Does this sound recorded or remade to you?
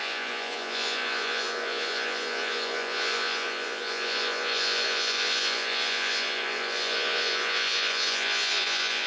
remade